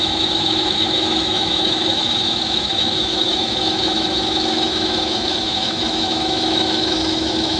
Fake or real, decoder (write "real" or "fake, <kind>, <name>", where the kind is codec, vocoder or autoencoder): fake, autoencoder, DAC-VAE